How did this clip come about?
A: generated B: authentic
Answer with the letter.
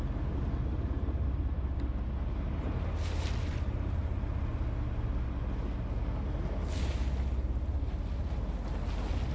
B